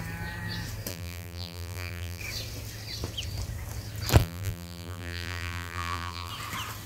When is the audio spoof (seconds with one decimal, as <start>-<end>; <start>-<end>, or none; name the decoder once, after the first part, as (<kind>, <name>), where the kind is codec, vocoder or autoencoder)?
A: 0.9-2.2 (vocoder, BigVGAN v2); 4.2-6.3